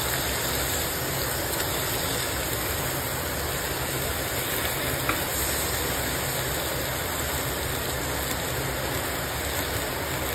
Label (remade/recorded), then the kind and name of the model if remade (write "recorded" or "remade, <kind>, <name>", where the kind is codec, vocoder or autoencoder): recorded